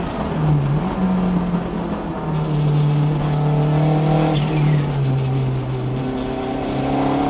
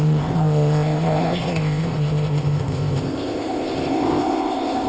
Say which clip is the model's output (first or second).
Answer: second